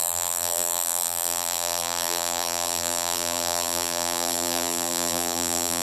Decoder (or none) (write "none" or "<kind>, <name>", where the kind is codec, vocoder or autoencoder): vocoder, BigVGAN v2